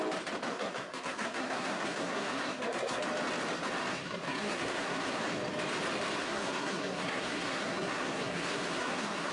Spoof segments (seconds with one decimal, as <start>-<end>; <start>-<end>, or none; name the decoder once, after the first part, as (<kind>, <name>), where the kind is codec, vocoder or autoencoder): 0.5-3.0 (codec, SNAC); 3.9-5.2; 6.2-9.3